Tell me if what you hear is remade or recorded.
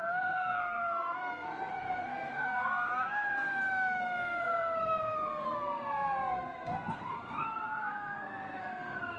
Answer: remade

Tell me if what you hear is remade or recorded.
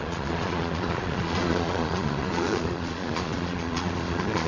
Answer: remade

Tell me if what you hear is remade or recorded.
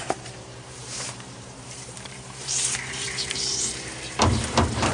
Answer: remade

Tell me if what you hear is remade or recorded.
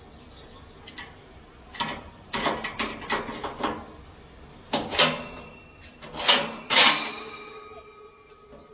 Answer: recorded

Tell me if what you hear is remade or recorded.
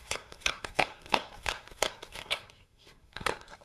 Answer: remade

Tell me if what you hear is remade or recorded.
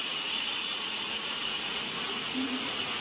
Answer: remade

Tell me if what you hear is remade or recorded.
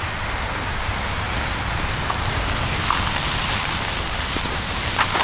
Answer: recorded